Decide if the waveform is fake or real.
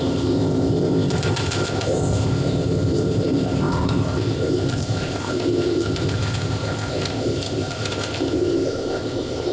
fake